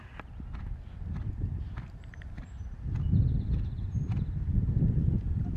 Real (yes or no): yes